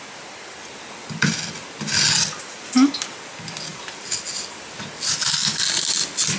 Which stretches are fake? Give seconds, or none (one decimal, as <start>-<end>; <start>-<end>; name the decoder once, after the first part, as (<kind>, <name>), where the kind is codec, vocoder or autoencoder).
none